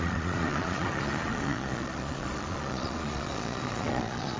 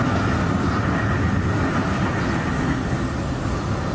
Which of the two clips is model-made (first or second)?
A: first